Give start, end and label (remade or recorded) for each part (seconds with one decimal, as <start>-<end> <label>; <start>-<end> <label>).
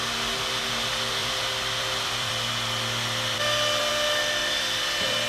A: 0.0-1.2 recorded; 1.2-3.9 remade; 3.9-4.4 recorded; 4.4-5.3 remade